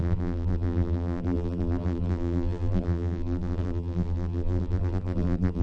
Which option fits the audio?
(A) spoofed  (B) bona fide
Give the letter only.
A